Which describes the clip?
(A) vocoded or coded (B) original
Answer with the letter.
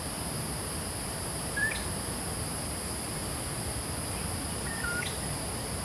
B